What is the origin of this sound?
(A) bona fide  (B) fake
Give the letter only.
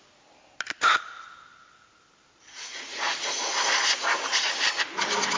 A